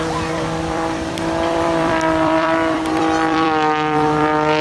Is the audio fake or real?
fake